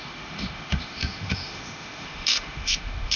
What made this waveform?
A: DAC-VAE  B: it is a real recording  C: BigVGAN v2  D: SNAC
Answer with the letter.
A